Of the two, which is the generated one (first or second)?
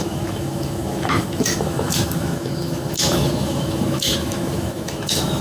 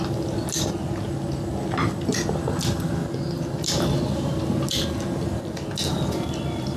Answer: first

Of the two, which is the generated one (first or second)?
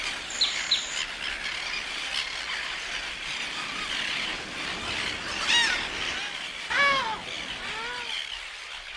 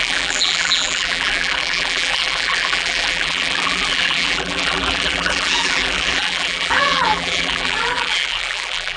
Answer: second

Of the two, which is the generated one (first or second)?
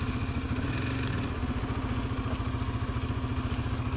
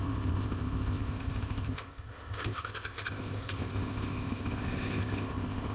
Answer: second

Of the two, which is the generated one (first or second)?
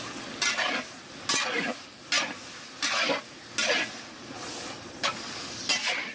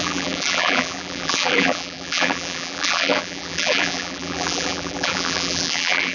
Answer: second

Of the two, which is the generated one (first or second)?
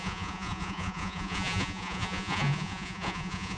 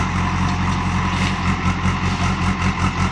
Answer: first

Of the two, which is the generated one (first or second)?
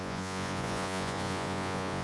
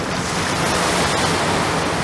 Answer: first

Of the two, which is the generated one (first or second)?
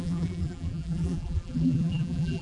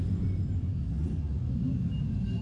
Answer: first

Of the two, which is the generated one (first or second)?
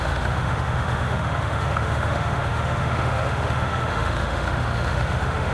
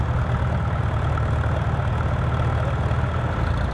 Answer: first